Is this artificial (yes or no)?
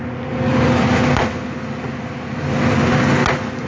no